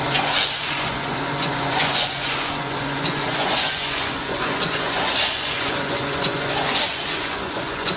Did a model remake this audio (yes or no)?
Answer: yes